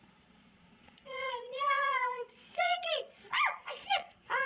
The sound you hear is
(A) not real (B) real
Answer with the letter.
A